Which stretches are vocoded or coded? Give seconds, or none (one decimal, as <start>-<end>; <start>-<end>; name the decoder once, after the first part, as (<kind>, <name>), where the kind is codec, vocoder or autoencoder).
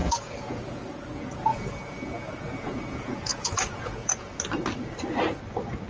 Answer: 0.0-0.9 (vocoder, Vocos); 1.5-4.4